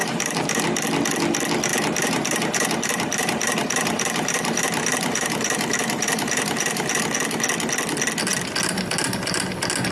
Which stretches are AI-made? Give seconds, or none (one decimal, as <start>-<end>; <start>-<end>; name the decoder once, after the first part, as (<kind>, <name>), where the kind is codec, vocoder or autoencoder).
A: 0.0-0.6 (vocoder, BigVGAN v2); 1.7-7.0